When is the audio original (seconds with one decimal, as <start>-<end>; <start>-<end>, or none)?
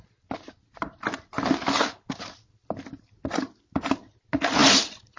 0.0-5.2